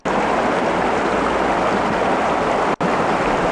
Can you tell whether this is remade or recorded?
recorded